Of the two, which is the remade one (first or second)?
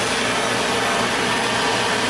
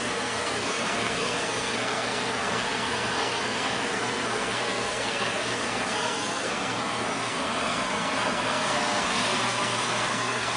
second